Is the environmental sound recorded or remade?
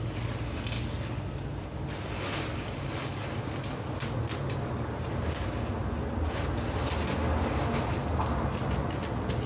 recorded